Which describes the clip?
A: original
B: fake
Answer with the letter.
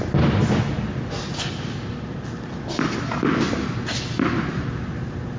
A